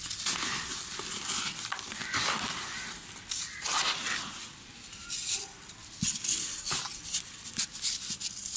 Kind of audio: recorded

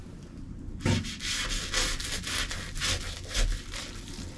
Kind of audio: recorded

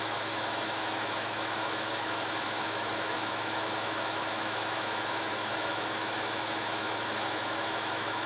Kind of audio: remade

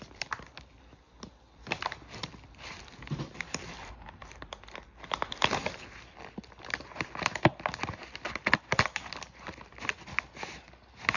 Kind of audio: recorded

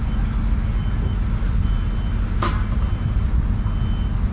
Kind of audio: recorded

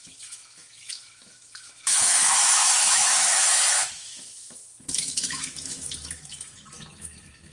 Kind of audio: remade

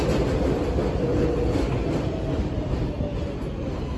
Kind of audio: recorded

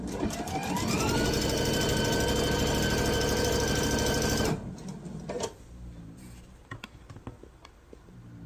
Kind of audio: recorded